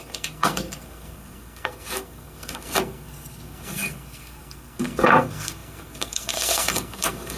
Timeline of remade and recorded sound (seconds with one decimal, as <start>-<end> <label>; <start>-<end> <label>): 0.0-7.4 remade